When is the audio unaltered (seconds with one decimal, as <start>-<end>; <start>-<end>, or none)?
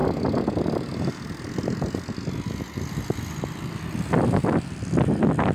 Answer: 0.0-5.5